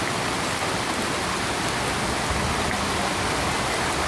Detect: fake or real real